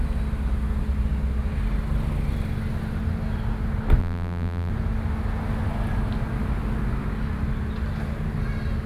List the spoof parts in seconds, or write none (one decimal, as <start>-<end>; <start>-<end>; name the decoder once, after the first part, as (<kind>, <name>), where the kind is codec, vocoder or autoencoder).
4.0-4.7 (vocoder, BigVGAN v2)